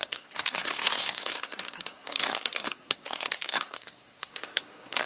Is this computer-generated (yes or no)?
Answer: yes